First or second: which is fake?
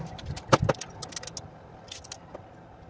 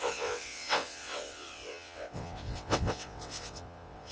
second